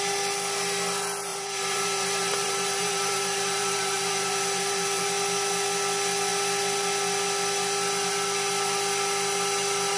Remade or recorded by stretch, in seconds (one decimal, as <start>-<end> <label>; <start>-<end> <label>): 0.0-1.3 recorded; 1.3-5.0 remade; 5.0-10.0 recorded